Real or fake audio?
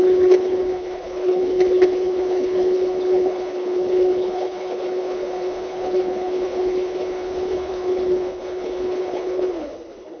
fake